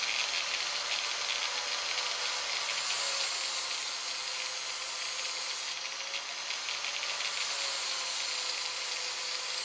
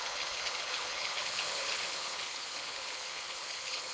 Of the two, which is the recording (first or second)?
first